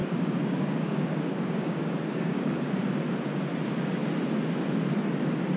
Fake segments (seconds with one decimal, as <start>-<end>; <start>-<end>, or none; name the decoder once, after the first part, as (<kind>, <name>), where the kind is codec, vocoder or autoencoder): 0.0-2.8 (codec, DAC)